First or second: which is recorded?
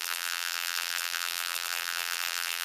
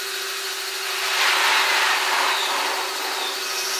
second